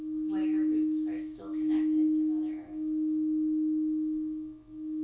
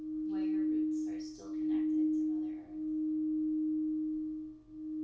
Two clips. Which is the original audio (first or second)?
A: second